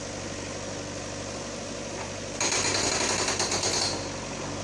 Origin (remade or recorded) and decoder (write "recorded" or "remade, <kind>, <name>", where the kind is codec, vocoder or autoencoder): recorded